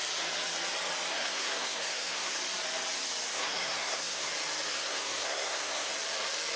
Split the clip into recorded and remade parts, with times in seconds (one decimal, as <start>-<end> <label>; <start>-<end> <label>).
0.0-1.1 recorded; 1.1-2.4 remade; 2.4-3.3 recorded; 3.3-4.3 remade; 4.3-4.7 recorded; 4.7-5.9 remade; 5.9-6.6 recorded